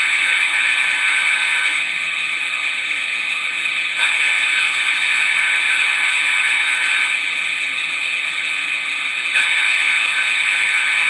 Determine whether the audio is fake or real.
fake